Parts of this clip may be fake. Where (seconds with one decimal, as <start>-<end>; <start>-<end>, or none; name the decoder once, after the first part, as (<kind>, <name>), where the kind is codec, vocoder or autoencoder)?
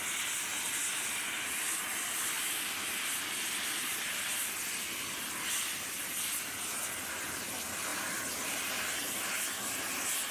7.9-8.7 (vocoder, BigVGAN v2)